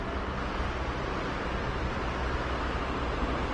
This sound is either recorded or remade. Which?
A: recorded